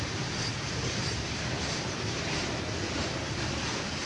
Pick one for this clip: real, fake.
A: fake